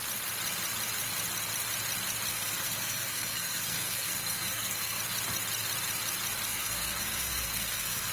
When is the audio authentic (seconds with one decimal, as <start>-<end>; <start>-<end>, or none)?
0.0-2.3; 5.0-6.5